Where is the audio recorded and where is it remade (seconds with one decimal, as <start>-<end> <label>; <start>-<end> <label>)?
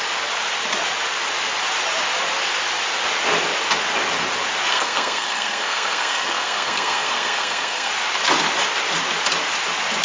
0.0-4.7 recorded; 4.7-7.9 remade; 7.9-10.0 recorded